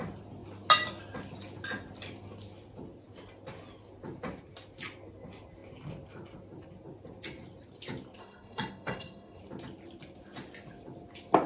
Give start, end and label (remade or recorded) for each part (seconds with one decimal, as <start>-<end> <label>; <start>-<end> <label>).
0.0-8.2 recorded; 8.2-9.4 remade; 9.4-11.5 recorded